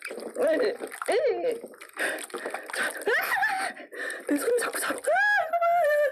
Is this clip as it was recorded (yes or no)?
yes